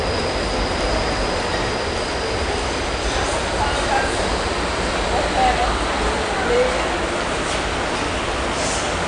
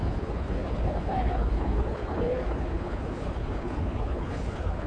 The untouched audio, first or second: first